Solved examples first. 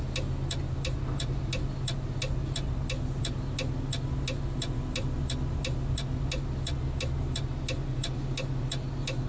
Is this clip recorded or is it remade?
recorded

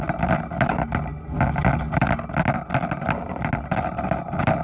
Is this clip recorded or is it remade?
recorded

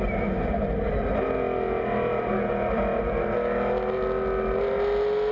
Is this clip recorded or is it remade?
recorded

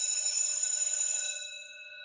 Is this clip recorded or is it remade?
remade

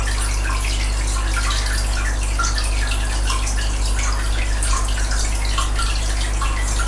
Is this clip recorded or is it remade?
recorded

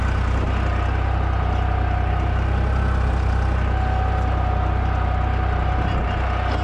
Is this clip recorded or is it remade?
recorded